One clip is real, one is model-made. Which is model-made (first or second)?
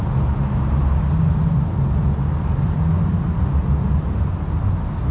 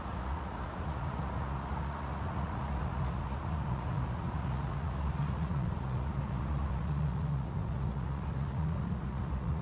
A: second